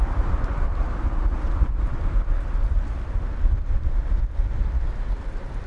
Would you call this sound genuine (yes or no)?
yes